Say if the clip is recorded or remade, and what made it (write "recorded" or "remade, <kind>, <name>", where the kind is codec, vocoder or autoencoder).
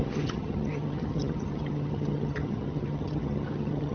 remade, vocoder, HiFi-GAN